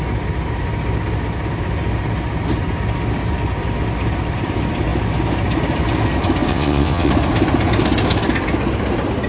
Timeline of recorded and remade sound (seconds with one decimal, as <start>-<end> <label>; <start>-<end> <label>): 0.0-6.5 recorded; 6.5-7.1 remade; 7.1-9.3 recorded